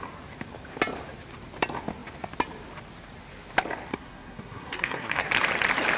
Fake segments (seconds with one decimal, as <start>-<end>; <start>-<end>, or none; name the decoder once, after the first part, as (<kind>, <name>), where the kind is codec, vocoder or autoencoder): 3.9-5.3 (codec, SNAC)